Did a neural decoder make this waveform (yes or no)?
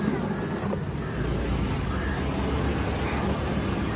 no